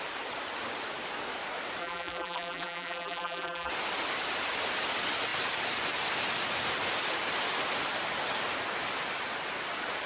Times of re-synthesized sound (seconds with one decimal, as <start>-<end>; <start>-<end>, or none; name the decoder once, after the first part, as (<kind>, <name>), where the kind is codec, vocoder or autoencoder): 1.8-3.7 (vocoder, BigVGAN v2)